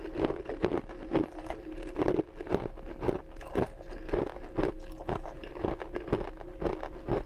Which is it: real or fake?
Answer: real